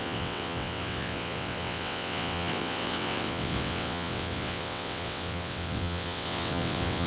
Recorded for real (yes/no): no